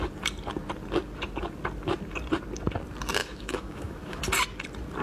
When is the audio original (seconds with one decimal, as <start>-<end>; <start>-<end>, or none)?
0.0-3.2; 4.2-5.0